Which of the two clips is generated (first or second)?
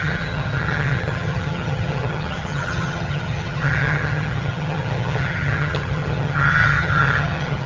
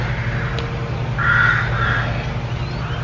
first